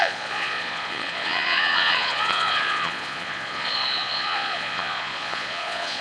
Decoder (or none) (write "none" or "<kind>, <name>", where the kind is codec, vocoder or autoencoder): vocoder, Vocos